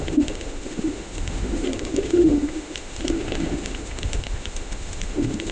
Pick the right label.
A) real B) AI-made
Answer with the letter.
B